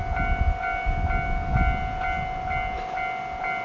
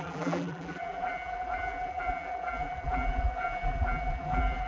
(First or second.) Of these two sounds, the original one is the first